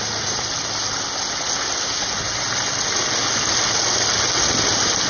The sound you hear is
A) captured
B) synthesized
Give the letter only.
A